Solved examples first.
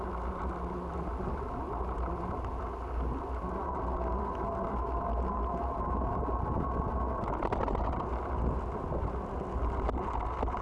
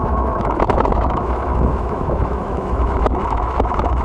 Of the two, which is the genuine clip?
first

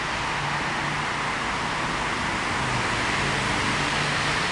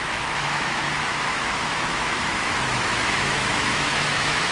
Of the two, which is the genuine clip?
first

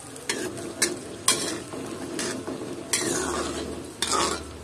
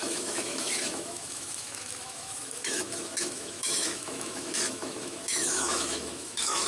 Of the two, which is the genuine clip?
first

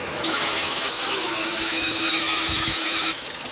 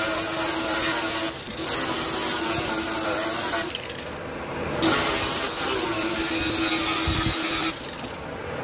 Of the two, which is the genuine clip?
second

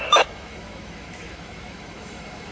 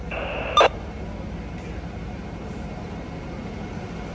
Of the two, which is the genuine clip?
second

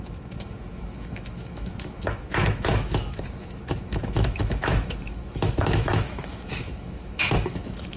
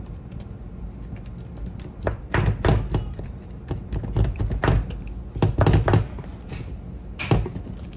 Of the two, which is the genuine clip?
second